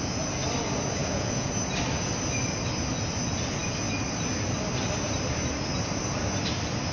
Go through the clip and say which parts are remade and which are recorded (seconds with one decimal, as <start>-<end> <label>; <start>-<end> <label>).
0.0-1.0 recorded; 1.0-1.5 remade; 1.5-6.9 recorded